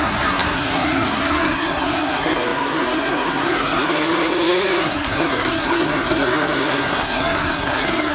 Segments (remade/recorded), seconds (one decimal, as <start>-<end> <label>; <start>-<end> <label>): 0.0-8.1 remade